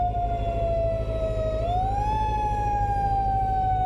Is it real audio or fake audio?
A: real